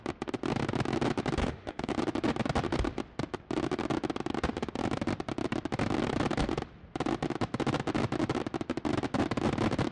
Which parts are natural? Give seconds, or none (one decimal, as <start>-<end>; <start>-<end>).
0.0-1.4; 1.9-9.9